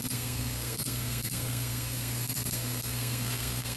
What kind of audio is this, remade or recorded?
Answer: remade